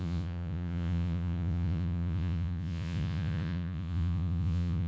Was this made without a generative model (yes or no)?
no